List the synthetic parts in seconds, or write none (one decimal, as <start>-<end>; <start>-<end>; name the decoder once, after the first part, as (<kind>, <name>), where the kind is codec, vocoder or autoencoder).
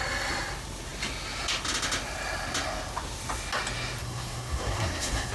4.0-5.3 (codec, SNAC)